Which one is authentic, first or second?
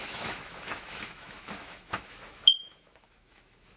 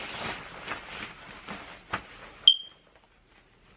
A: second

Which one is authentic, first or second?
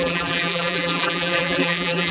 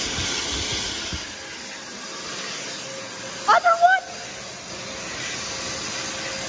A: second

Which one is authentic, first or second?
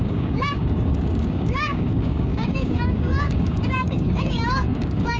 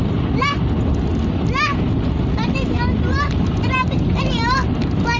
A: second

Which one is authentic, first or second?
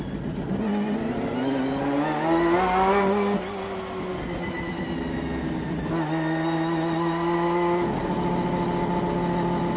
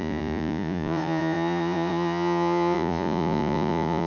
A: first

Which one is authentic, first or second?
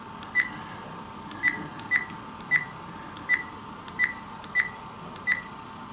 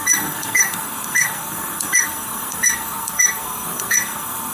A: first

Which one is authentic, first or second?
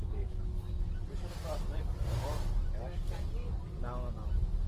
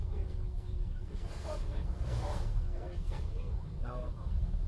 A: first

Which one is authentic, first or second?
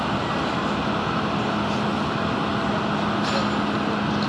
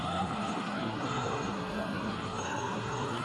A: first